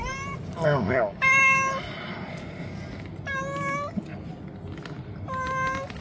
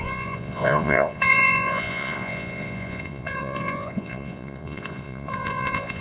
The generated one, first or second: second